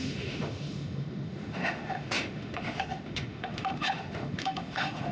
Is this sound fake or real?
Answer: fake